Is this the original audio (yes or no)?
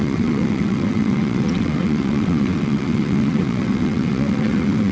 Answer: no